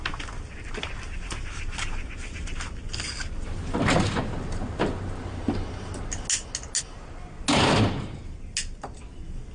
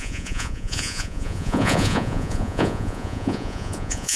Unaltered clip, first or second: first